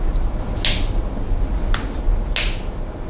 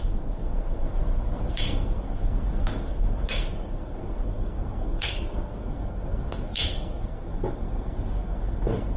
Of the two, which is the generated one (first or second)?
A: second